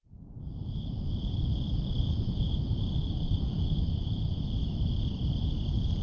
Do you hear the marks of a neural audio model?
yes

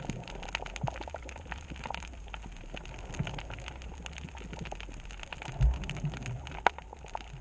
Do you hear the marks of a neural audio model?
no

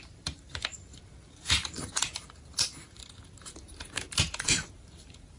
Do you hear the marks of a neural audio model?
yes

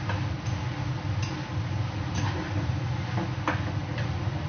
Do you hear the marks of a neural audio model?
no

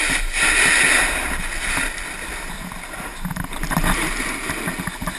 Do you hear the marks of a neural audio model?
no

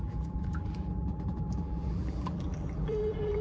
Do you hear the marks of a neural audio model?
yes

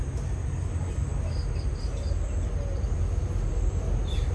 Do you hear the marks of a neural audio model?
no